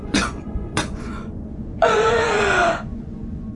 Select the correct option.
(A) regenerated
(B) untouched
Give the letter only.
A